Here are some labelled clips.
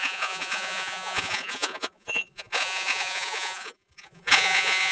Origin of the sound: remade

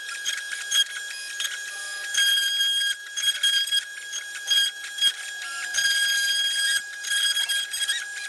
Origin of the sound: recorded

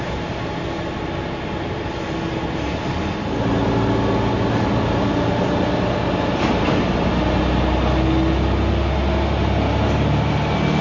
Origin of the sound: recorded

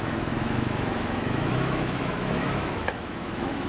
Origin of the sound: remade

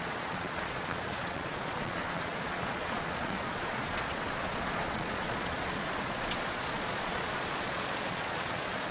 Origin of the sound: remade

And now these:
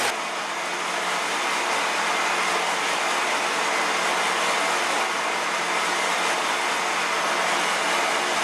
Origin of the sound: recorded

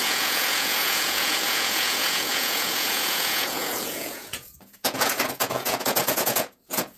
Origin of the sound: remade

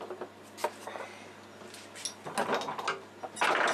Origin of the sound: recorded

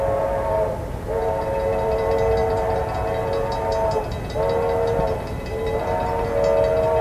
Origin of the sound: recorded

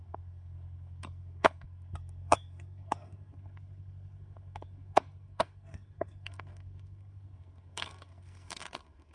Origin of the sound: remade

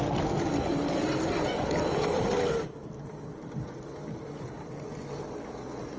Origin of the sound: recorded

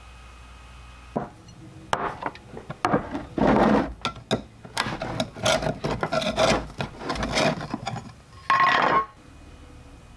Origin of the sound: recorded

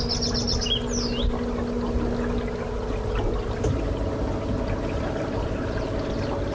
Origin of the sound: recorded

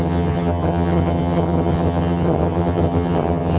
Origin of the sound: remade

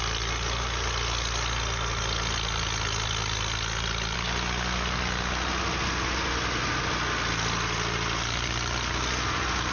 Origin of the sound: recorded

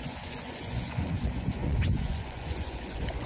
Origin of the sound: remade